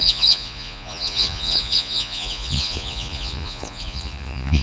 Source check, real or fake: fake